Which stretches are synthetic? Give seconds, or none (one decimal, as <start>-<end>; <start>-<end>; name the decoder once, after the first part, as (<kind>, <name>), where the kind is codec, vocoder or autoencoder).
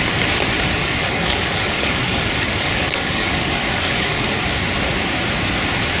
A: 0.8-4.4 (codec, DAC)